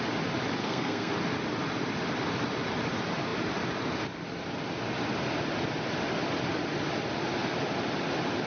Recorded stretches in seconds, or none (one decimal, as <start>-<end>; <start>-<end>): 0.0-0.6; 1.1-8.5